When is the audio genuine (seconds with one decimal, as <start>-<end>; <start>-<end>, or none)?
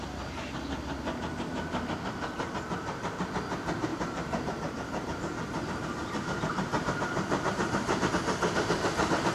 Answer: 0.0-3.9; 8.1-9.3